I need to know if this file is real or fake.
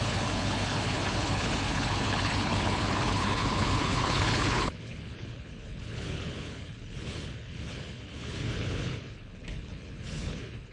fake